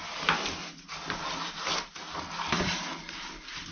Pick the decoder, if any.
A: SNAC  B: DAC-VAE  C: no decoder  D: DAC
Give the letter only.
C